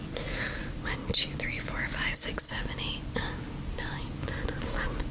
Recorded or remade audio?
recorded